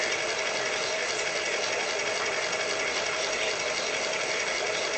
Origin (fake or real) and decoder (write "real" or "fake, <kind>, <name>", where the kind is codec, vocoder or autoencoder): real